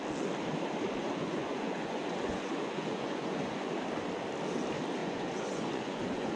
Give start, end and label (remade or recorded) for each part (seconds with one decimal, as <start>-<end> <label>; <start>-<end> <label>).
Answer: 0.0-1.0 recorded; 1.0-3.7 remade; 3.7-5.0 recorded; 5.0-6.4 remade

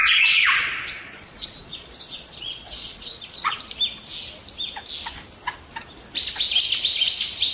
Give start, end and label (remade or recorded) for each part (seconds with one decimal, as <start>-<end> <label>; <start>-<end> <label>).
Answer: 0.0-3.6 remade; 3.6-7.5 recorded

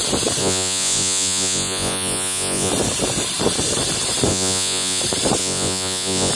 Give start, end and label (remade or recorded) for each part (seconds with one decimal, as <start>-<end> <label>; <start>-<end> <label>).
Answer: 0.0-0.4 recorded; 0.4-2.7 remade; 2.7-4.3 recorded; 4.3-5.0 remade; 5.0-5.4 recorded; 5.4-6.3 remade

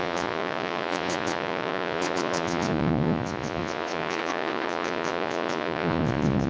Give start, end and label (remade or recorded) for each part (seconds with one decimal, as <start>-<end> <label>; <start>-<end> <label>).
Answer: 0.0-6.5 remade

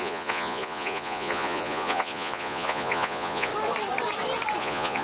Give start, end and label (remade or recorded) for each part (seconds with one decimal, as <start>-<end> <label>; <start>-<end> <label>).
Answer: 0.0-3.5 remade; 3.5-4.6 recorded; 4.6-5.0 remade

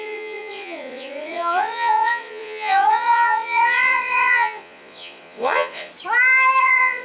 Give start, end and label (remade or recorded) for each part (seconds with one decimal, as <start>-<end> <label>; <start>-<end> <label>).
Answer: 0.0-5.9 remade; 5.9-6.6 recorded; 6.6-7.0 remade